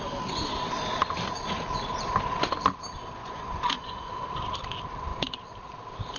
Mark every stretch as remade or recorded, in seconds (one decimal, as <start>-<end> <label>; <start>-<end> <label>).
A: 0.0-3.2 recorded; 3.2-4.1 remade; 4.1-6.2 recorded